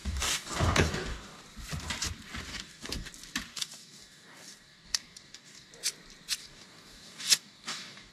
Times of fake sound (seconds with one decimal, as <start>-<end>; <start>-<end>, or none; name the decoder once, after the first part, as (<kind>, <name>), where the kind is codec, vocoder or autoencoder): 0.0-1.4 (codec, DAC); 2.5-3.1; 3.5-5.7; 6.4-8.1